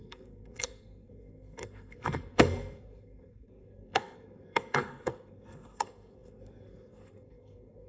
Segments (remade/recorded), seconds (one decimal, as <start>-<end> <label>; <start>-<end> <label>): 0.0-7.9 remade